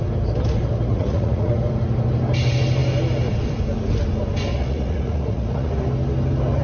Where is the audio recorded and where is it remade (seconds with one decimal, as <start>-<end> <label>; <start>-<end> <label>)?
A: 0.0-0.9 recorded; 0.9-1.5 remade; 1.5-4.5 recorded; 4.5-5.7 remade; 5.7-6.6 recorded